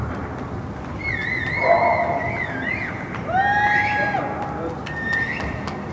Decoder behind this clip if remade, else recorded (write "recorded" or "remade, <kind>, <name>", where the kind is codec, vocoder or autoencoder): recorded